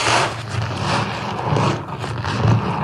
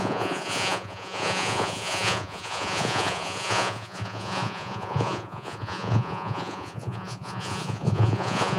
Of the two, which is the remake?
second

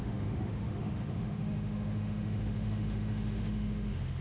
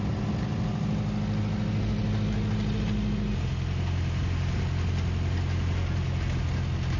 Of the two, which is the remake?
first